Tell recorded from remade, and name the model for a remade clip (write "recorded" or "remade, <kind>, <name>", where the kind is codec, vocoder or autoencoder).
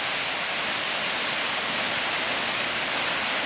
recorded